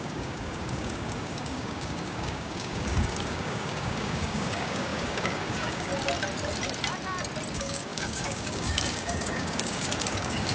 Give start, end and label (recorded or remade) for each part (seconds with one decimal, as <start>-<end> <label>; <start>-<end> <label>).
0.0-5.9 remade; 5.9-7.5 recorded; 7.5-10.5 remade